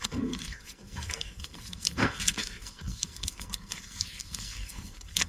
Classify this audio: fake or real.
fake